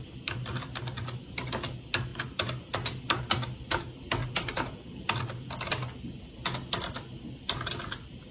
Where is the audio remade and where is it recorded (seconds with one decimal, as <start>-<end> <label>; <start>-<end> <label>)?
0.0-8.3 recorded

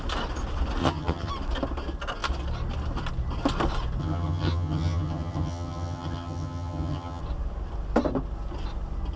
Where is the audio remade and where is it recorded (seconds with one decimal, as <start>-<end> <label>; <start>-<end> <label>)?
0.0-0.8 recorded; 0.8-1.3 remade; 1.3-4.0 recorded; 4.0-7.2 remade; 7.2-9.2 recorded

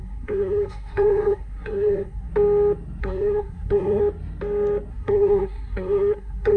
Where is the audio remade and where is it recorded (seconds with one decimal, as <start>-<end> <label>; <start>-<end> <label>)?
0.0-2.3 remade; 2.3-3.0 recorded; 3.0-4.0 remade; 4.0-4.9 recorded; 4.9-6.6 remade

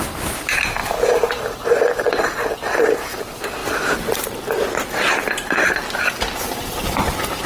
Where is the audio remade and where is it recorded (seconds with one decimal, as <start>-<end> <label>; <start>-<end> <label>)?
0.0-0.8 recorded; 0.8-1.6 remade; 1.6-3.6 recorded; 3.6-4.2 remade; 4.2-6.4 recorded; 6.4-7.5 remade

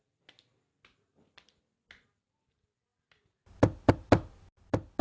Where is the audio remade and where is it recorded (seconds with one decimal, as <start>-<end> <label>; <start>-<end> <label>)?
0.0-5.0 recorded

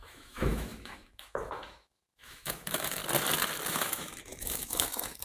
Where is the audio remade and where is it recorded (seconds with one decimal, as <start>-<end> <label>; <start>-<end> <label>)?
0.0-3.0 remade; 3.0-3.7 recorded; 3.7-5.2 remade

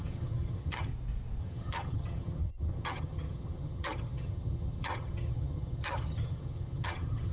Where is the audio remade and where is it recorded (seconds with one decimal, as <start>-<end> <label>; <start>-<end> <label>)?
0.0-0.9 remade; 0.9-1.4 recorded; 1.4-7.3 remade